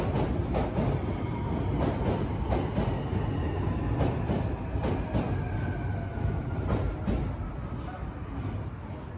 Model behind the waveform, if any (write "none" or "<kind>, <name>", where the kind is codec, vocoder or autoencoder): none